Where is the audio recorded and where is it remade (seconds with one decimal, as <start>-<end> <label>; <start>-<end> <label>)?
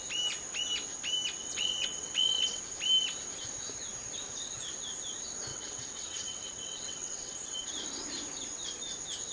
0.0-1.4 recorded; 1.4-2.6 remade; 2.6-5.5 recorded; 5.5-7.7 remade; 7.7-9.3 recorded